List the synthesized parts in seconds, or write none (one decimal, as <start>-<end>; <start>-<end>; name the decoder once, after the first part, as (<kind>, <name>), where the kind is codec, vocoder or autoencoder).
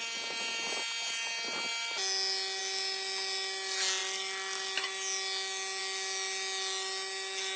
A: none